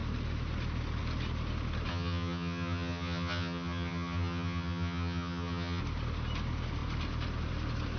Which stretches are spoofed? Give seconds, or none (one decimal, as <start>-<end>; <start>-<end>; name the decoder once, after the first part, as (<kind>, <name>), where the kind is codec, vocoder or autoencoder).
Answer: 1.9-5.8 (vocoder, HiFi-GAN)